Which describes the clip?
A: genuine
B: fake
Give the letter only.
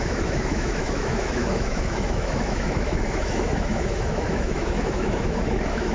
B